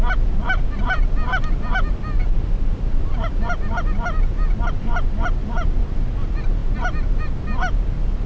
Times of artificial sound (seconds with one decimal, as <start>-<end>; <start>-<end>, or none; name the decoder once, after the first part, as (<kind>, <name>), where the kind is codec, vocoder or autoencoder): none